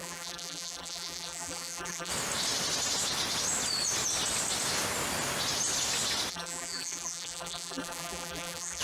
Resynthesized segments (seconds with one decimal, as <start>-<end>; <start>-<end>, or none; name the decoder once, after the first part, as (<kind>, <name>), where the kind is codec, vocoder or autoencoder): 0.0-2.1 (vocoder, BigVGAN v2); 6.3-8.8